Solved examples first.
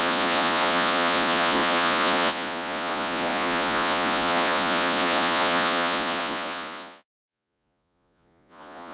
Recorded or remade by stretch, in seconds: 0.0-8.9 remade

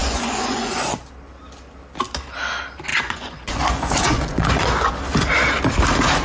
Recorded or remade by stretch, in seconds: 0.0-1.0 remade; 1.0-2.9 recorded; 2.9-4.9 remade; 4.9-6.2 recorded

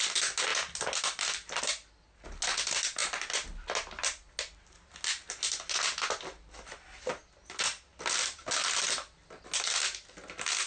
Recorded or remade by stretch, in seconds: 0.0-10.7 recorded

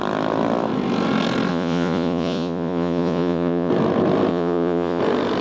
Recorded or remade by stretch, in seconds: 0.0-1.5 recorded; 1.5-3.7 remade; 3.7-4.3 recorded; 4.3-5.0 remade; 5.0-5.4 recorded

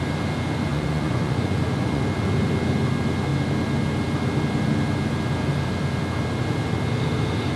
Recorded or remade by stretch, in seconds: 0.0-0.7 recorded; 0.7-2.0 remade; 2.0-7.6 recorded

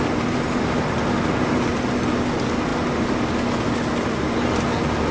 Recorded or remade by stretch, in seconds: 0.0-5.1 recorded